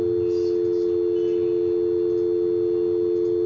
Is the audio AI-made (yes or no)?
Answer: no